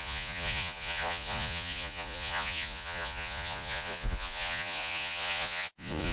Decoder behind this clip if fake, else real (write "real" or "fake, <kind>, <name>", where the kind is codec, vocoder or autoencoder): fake, vocoder, Vocos